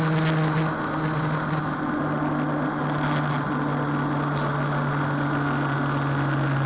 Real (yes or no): yes